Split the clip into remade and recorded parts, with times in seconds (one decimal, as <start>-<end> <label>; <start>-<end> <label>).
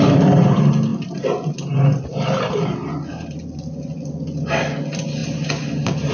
0.0-6.1 recorded